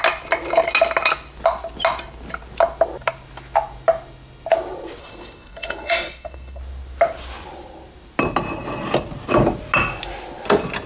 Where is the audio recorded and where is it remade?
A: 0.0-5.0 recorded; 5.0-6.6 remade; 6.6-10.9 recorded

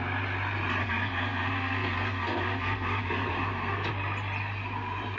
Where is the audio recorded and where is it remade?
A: 0.0-0.8 recorded; 0.8-3.9 remade; 3.9-5.2 recorded

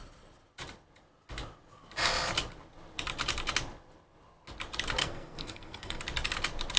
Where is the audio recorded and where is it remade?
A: 0.0-5.0 recorded; 5.0-6.0 remade; 6.0-6.8 recorded

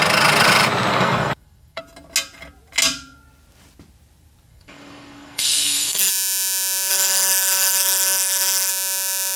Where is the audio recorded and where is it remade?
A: 0.0-0.9 recorded; 0.9-1.8 remade; 1.8-4.5 recorded; 4.5-6.1 remade; 6.1-6.9 recorded; 6.9-8.7 remade; 8.7-9.4 recorded